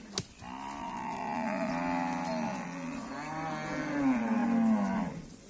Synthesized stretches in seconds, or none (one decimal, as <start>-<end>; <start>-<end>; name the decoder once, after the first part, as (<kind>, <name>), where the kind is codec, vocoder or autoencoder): 0.8-1.7 (vocoder, Vocos)